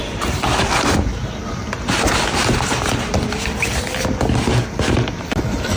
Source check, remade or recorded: recorded